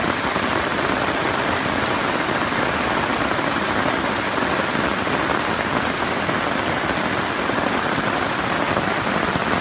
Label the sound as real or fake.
real